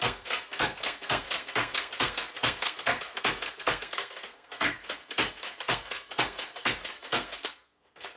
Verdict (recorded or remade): remade